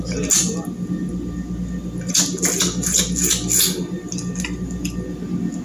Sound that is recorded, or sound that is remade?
recorded